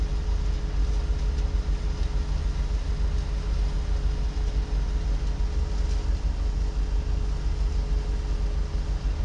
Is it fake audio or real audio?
real